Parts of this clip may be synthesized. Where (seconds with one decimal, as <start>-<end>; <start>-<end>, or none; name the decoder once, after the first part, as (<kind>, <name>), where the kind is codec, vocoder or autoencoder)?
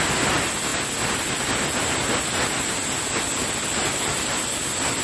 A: none